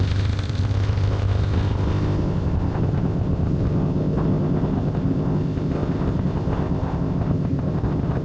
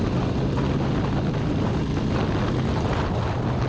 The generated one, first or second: first